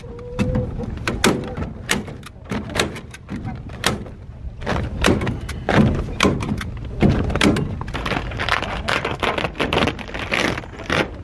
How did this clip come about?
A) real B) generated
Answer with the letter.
A